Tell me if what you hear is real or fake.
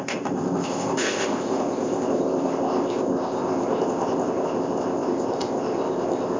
fake